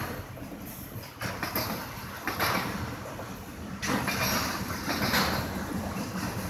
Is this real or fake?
real